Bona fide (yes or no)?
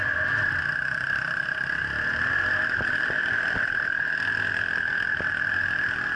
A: yes